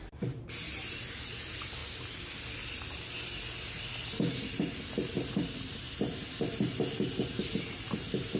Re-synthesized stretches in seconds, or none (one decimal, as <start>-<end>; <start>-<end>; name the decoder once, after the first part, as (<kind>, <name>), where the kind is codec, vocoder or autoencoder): 0.0-1.8 (vocoder, BigVGAN v2); 4.4-5.8; 7.4-8.4